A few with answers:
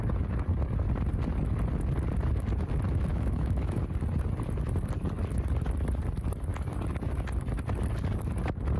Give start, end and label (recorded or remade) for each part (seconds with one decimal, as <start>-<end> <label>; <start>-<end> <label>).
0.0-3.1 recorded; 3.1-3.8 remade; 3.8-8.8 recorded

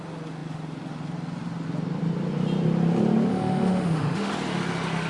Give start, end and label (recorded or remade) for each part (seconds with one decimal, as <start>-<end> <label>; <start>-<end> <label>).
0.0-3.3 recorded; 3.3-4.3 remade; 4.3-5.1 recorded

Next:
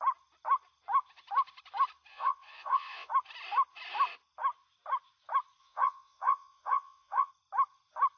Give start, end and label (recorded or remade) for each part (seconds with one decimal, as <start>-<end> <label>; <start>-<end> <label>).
0.0-2.1 recorded; 2.1-3.1 remade; 3.1-5.6 recorded; 5.6-7.3 remade; 7.3-8.2 recorded